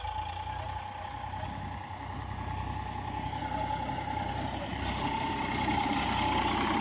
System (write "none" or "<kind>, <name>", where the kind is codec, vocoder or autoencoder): none